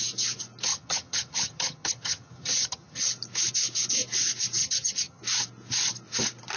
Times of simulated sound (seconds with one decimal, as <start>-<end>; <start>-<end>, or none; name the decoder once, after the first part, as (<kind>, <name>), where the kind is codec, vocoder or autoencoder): 0.7-3.1 (vocoder, HiFi-GAN); 4.6-5.2